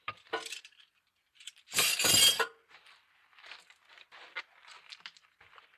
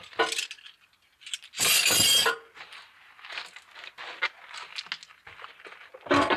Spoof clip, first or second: first